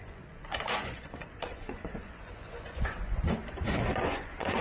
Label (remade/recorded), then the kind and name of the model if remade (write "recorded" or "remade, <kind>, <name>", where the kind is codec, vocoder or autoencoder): remade, vocoder, Vocos